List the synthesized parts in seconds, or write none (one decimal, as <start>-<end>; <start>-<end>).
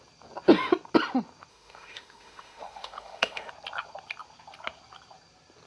1.5-3.5